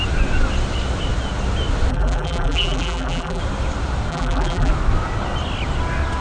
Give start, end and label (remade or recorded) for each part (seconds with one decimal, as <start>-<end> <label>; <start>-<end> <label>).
0.0-1.9 recorded; 1.9-3.4 remade; 3.4-4.1 recorded; 4.1-4.7 remade; 4.7-6.2 recorded

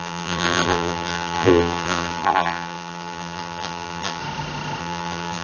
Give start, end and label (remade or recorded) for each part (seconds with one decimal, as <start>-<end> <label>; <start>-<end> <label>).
0.0-4.2 remade; 4.2-4.8 recorded; 4.8-5.4 remade

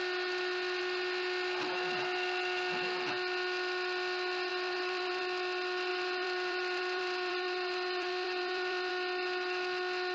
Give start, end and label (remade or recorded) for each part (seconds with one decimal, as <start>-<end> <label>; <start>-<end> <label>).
0.0-4.5 recorded; 4.5-5.2 remade; 5.2-5.9 recorded; 5.9-8.9 remade; 8.9-10.1 recorded

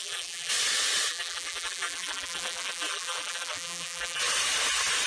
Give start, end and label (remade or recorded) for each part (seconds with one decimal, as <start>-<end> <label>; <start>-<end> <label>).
0.0-0.5 remade; 0.5-1.1 recorded; 1.1-4.2 remade; 4.2-5.1 recorded

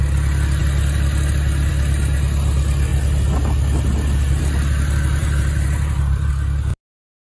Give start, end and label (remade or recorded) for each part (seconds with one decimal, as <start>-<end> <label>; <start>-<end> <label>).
0.0-5.2 recorded; 5.2-6.3 remade; 6.3-7.4 recorded

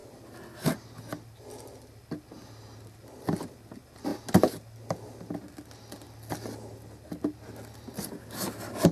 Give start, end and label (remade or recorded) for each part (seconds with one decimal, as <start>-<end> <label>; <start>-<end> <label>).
0.0-8.9 recorded

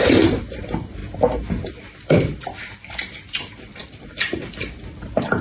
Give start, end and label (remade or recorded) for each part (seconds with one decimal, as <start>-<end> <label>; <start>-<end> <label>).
0.0-1.0 remade; 1.0-1.5 recorded; 1.5-5.4 remade